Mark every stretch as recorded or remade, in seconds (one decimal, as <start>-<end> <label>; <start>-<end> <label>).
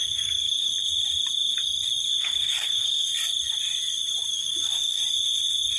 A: 0.0-0.7 remade; 0.7-2.2 recorded; 2.2-3.1 remade; 3.1-4.3 recorded; 4.3-5.0 remade; 5.0-5.8 recorded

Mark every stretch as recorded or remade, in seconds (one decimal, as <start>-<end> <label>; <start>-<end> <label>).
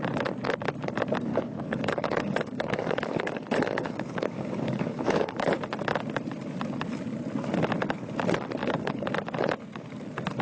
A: 0.0-1.3 recorded; 1.3-5.5 remade; 5.5-8.6 recorded; 8.6-9.1 remade; 9.1-10.4 recorded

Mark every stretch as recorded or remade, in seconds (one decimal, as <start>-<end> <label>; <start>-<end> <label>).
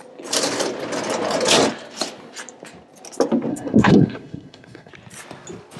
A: 0.0-3.5 recorded; 3.5-4.9 remade; 4.9-5.8 recorded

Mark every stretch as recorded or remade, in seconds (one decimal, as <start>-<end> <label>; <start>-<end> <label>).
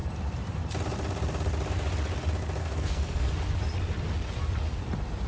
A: 0.0-2.6 recorded; 2.6-3.3 remade; 3.3-5.3 recorded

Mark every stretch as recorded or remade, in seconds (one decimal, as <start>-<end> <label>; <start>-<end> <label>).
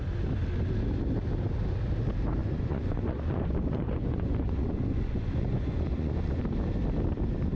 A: 0.0-2.4 recorded; 2.4-6.4 remade; 6.4-7.5 recorded